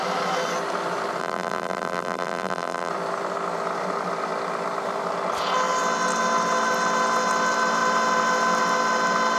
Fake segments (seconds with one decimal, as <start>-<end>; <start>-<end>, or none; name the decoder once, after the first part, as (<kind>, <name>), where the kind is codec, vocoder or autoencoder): 1.2-2.9 (vocoder, BigVGAN v2)